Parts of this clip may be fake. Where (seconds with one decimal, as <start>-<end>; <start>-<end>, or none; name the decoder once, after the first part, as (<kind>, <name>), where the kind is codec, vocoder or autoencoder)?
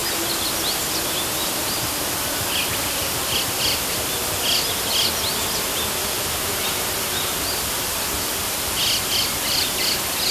none